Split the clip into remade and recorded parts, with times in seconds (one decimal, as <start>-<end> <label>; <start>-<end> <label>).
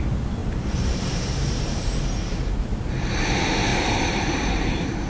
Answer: 0.0-0.4 recorded; 0.4-2.0 remade; 2.0-3.7 recorded; 3.7-5.1 remade